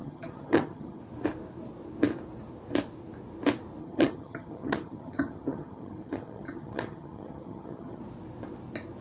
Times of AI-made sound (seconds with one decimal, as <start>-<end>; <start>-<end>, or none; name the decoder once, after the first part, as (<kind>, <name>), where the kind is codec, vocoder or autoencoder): 0.0-1.0 (vocoder, HiFi-GAN); 3.8-8.0